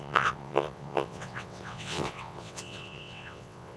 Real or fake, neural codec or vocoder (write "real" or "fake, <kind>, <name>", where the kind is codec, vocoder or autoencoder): fake, vocoder, WaveNeXt